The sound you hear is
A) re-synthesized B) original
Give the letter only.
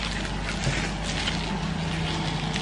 B